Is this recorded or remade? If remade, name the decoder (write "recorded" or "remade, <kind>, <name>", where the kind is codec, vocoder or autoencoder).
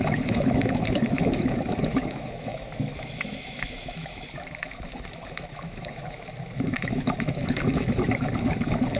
remade, autoencoder, DAC-VAE